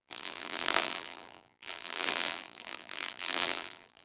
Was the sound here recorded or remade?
remade